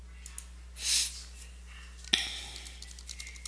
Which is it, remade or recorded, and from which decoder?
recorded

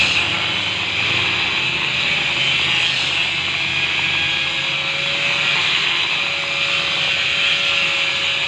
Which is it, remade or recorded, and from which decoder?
recorded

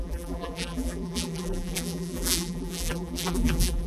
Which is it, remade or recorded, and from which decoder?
remade, vocoder, BigVGAN v2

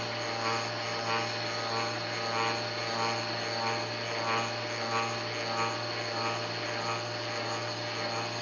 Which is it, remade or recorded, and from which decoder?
recorded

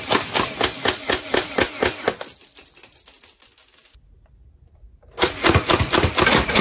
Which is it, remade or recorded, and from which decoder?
recorded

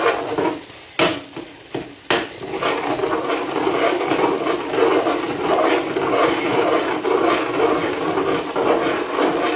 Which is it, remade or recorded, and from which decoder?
recorded